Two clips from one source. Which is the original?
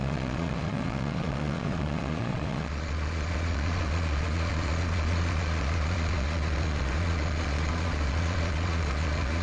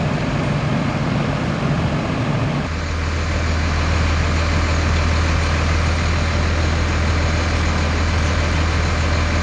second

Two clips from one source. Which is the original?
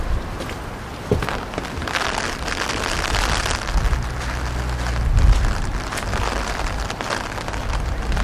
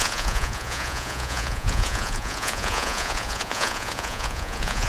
first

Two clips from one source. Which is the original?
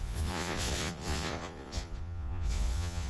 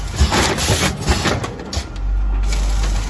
second